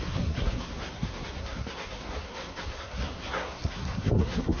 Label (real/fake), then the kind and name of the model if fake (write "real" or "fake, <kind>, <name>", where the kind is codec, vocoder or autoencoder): fake, codec, SNAC